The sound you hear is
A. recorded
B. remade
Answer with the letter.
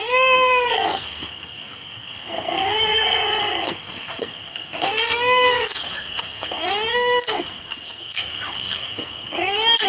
B